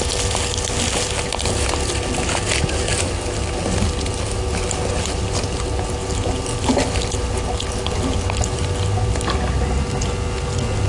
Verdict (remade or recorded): recorded